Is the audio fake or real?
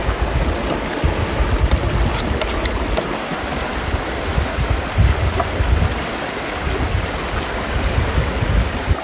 real